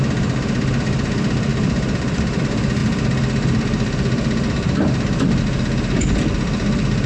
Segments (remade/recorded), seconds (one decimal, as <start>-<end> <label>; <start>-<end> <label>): 0.0-1.5 recorded; 1.5-2.4 remade; 2.4-7.1 recorded